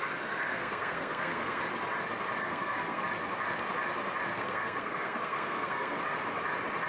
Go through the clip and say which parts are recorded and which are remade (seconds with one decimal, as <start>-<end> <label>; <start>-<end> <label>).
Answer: 0.0-0.5 recorded; 0.5-1.6 remade; 1.6-2.4 recorded; 2.4-3.0 remade; 3.0-4.3 recorded; 4.3-6.0 remade; 6.0-6.9 recorded